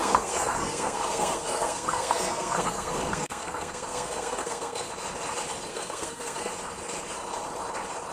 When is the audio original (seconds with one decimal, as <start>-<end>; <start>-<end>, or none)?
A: 4.9-5.7; 6.5-8.1